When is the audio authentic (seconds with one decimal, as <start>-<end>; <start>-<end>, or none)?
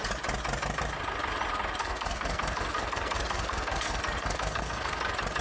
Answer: 0.0-1.8; 5.0-5.4